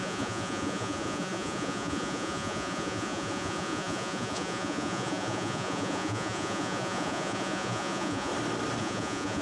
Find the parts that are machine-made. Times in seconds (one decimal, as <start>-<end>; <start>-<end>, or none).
0.0-8.3; 8.8-9.4